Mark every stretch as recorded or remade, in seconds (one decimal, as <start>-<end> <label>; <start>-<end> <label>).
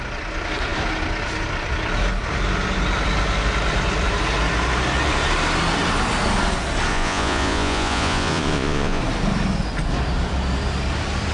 0.0-6.9 recorded; 6.9-9.0 remade; 9.0-11.3 recorded